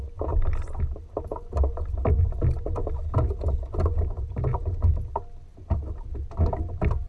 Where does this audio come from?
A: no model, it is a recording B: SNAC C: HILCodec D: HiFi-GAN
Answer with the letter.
A